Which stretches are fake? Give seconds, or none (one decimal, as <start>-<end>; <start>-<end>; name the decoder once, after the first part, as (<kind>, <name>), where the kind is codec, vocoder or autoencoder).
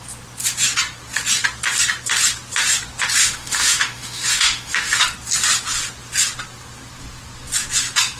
3.2-5.0 (autoencoder, DAC-VAE)